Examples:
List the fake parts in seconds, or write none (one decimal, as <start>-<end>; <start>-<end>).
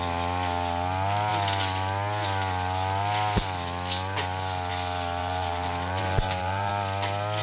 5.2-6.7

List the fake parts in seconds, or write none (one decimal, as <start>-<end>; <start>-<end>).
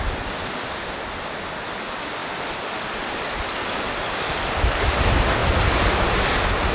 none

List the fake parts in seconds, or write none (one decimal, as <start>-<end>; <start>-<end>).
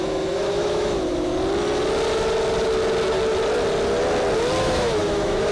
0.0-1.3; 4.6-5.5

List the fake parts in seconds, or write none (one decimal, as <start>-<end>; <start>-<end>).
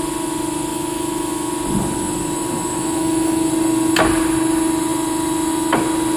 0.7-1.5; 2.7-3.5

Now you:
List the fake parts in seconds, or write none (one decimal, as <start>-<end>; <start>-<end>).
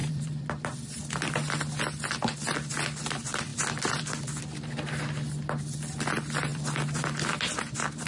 0.0-1.7; 3.5-4.4; 6.5-8.1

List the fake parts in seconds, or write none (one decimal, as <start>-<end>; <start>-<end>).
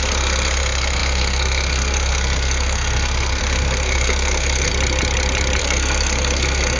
0.0-4.7; 5.6-6.8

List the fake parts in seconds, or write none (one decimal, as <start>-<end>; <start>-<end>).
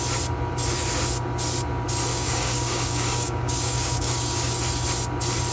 2.1-4.6